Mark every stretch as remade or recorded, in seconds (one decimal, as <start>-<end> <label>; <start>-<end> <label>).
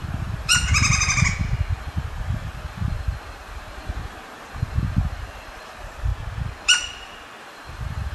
0.0-0.5 remade; 0.5-1.8 recorded; 1.8-6.1 remade; 6.1-7.5 recorded; 7.5-8.1 remade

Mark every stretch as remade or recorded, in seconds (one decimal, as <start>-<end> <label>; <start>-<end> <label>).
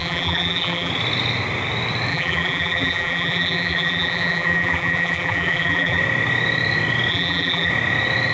0.0-0.9 remade; 0.9-2.1 recorded; 2.1-6.0 remade; 6.0-7.1 recorded; 7.1-7.7 remade; 7.7-8.3 recorded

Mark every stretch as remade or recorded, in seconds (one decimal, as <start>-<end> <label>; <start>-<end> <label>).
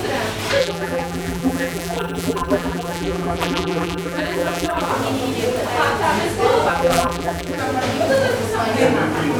0.0-0.6 recorded; 0.6-4.9 remade; 4.9-6.7 recorded; 6.7-7.6 remade; 7.6-9.4 recorded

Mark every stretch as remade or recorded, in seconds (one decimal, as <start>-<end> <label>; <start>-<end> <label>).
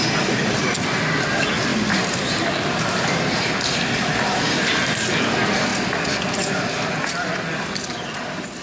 0.0-1.7 recorded; 1.7-5.0 remade; 5.0-8.6 recorded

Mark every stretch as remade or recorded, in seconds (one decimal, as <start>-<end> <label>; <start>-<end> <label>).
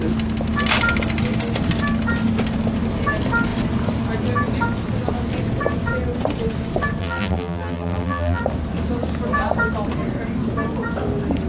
0.0-7.0 recorded; 7.0-8.4 remade; 8.4-11.5 recorded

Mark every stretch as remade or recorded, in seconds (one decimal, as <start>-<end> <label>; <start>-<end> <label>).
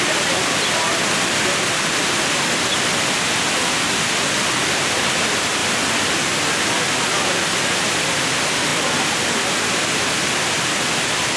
0.0-11.4 recorded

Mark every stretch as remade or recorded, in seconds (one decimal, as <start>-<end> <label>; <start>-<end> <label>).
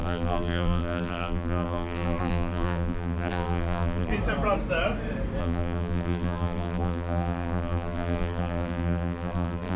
0.0-4.1 remade; 4.1-5.4 recorded; 5.4-9.8 remade